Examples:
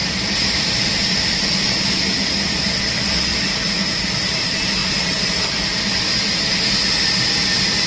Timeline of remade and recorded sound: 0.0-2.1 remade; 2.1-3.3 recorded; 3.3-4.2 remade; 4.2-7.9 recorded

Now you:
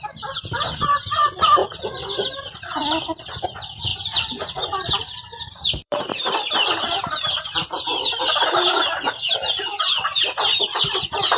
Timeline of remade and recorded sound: 0.0-3.9 recorded; 3.9-8.8 remade; 8.8-11.4 recorded

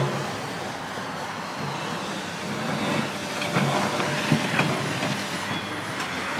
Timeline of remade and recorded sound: 0.0-6.4 recorded

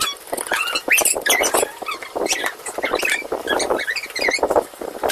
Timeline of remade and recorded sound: 0.0-0.8 recorded; 0.8-1.6 remade; 1.6-5.1 recorded

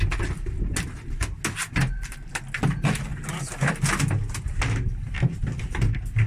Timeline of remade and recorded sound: 0.0-1.8 recorded; 1.8-2.4 remade; 2.4-6.3 recorded

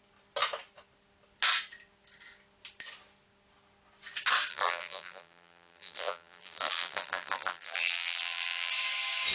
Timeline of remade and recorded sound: 0.0-4.5 recorded; 4.5-8.7 remade; 8.7-9.3 recorded